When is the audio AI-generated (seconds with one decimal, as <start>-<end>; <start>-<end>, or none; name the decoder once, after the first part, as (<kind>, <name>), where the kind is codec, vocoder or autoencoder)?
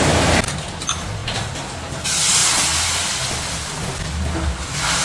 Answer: none